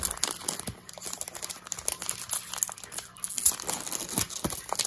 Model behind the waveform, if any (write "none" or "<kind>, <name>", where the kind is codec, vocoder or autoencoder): none